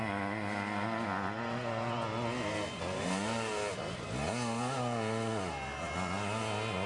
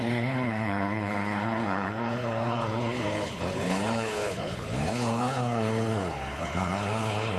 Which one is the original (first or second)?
first